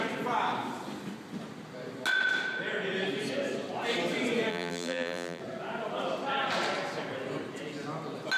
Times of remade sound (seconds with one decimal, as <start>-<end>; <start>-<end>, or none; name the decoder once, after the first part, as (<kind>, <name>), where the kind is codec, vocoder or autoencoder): 4.5-5.4 (vocoder, BigVGAN v2)